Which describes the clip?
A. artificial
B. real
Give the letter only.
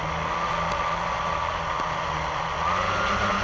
B